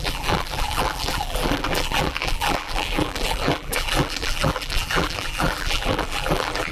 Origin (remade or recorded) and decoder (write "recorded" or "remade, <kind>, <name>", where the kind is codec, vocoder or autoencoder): remade, vocoder, BigVGAN v2